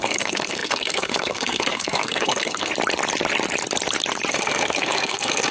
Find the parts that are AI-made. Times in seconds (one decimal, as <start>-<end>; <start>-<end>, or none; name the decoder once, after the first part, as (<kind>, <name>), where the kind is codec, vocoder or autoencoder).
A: 0.0-2.7 (codec, SNAC); 4.3-5.5